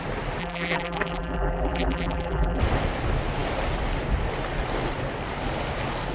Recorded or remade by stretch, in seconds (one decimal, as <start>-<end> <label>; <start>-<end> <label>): 0.0-0.4 recorded; 0.4-2.6 remade; 2.6-6.1 recorded